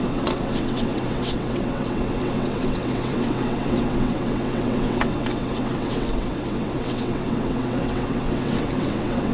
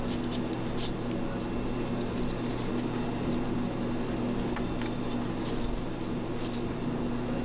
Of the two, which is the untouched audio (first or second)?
second